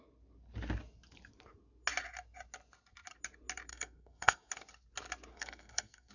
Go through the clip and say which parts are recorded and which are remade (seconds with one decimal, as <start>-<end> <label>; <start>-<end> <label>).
0.0-3.7 recorded; 3.7-4.5 remade; 4.5-5.3 recorded; 5.3-6.1 remade